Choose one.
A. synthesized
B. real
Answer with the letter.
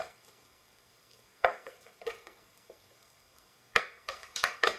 A